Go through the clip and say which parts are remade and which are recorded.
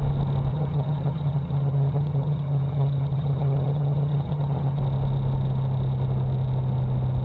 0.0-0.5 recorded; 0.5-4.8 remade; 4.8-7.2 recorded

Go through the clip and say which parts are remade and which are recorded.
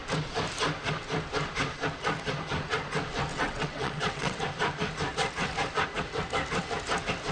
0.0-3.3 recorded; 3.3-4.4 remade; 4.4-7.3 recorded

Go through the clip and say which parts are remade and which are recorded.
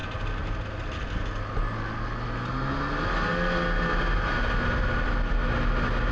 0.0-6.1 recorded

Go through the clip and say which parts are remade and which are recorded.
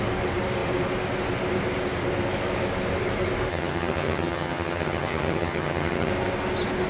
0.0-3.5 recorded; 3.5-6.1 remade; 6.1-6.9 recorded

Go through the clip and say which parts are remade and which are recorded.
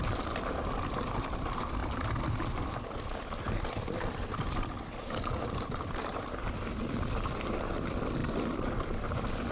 0.0-1.8 remade; 1.8-2.8 recorded; 2.8-9.5 remade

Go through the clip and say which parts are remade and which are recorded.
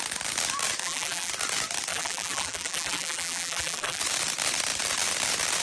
0.0-0.8 recorded; 0.8-1.3 remade; 1.3-1.9 recorded; 1.9-4.0 remade; 4.0-5.6 recorded